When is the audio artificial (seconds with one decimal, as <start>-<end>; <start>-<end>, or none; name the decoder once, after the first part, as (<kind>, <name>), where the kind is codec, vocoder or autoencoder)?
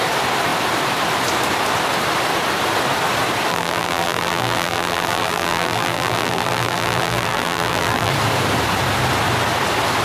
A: 3.5-8.1 (vocoder, BigVGAN v2)